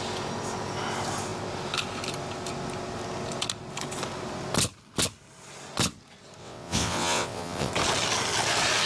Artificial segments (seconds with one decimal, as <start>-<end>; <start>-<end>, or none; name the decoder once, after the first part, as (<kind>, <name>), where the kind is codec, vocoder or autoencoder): 6.4-7.7 (vocoder, WaveNeXt)